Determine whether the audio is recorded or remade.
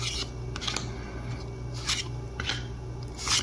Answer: recorded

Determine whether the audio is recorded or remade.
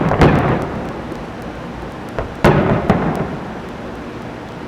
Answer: recorded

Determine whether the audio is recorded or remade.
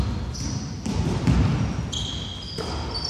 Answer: recorded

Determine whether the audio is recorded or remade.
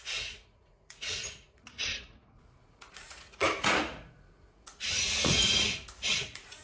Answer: remade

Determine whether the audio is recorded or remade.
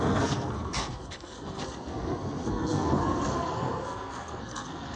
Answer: remade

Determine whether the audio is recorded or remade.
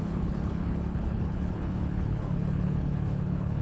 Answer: remade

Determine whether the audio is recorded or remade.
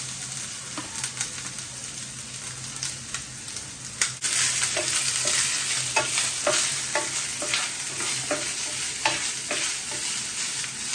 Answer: recorded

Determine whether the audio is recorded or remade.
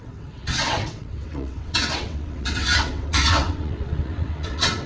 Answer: remade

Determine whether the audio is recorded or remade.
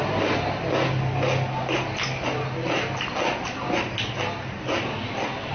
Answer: recorded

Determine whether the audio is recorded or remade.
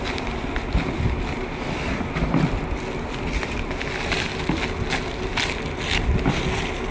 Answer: recorded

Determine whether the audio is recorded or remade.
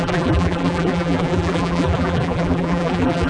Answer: remade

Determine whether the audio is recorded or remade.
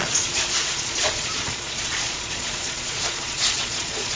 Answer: remade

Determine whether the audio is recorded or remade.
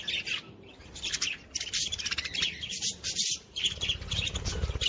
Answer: remade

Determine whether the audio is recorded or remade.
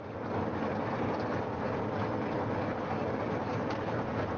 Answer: recorded